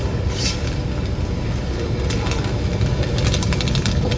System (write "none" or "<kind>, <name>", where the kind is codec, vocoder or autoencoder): none